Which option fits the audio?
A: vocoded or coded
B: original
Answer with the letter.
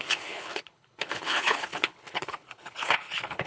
A